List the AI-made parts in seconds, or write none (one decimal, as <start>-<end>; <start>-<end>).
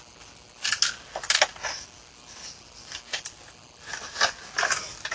none